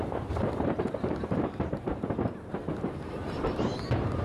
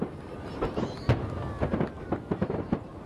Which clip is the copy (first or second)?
first